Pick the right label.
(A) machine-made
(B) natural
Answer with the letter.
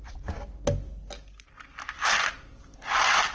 B